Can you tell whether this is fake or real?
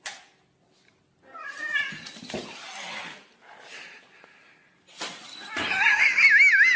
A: real